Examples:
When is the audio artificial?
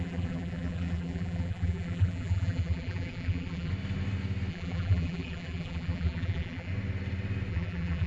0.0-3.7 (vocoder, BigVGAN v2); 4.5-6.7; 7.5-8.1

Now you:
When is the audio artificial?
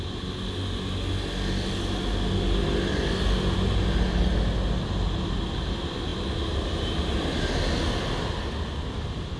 none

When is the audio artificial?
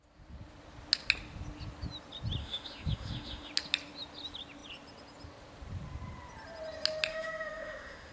2.4-3.5 (autoencoder, DAC-VAE); 7.1-8.1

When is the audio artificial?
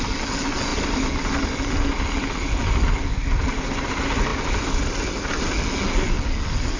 none